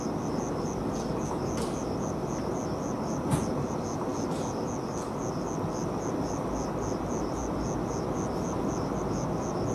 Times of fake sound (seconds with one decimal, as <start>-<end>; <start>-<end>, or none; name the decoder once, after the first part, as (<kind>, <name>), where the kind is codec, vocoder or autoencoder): none